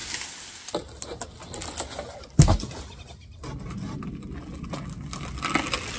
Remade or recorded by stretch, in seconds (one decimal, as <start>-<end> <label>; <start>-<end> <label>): 0.0-6.0 recorded